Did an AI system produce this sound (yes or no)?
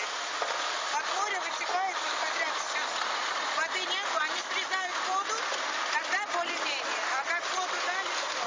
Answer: no